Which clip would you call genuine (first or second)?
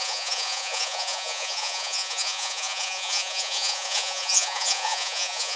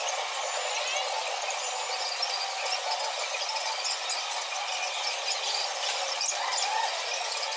second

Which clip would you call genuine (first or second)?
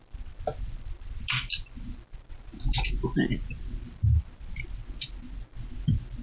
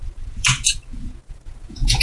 first